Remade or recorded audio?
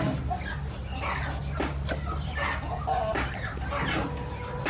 recorded